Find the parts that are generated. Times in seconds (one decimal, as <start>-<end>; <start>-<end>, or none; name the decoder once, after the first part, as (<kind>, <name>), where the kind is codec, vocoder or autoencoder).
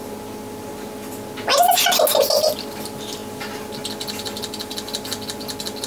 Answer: none